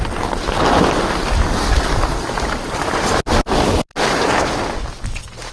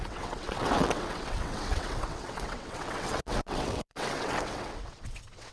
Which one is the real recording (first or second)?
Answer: first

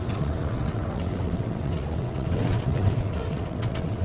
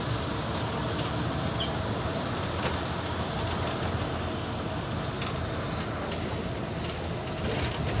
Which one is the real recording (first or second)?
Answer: second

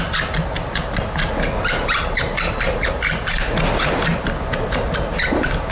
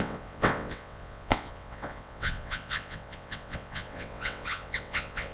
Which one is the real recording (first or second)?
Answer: first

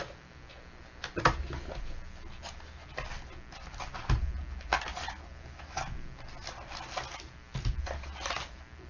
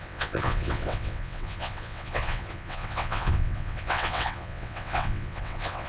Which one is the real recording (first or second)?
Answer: first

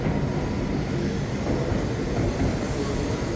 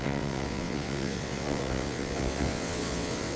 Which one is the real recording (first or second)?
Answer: first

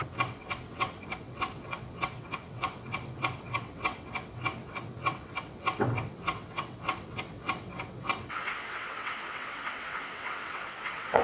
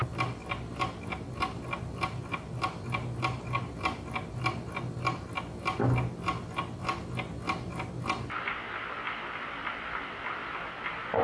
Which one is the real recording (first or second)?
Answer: second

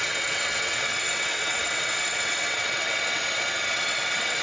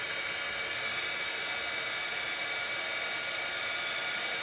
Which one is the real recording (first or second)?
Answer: second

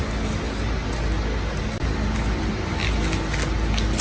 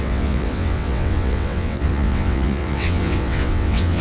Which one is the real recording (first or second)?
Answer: first